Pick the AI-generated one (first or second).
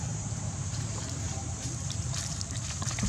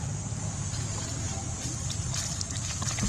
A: first